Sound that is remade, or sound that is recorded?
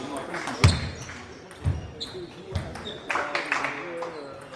recorded